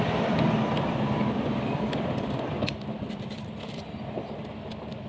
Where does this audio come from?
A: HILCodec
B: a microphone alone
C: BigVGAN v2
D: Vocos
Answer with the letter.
B